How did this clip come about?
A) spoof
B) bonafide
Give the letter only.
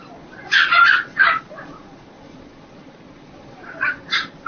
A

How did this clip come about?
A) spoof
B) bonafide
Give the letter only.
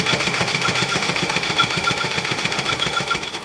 A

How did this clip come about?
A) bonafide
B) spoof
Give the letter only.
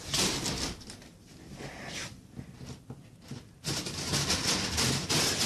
A